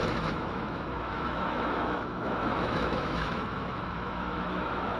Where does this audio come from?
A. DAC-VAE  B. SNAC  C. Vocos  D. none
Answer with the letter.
A